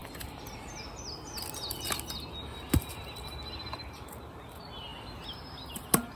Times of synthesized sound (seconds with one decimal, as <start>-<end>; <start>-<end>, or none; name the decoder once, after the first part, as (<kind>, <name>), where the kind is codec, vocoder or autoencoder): none